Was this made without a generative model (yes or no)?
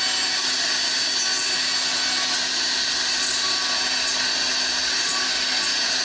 yes